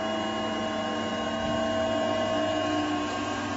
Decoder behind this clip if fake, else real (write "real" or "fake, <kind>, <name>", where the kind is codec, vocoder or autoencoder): real